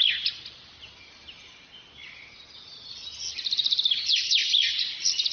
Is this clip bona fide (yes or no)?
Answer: yes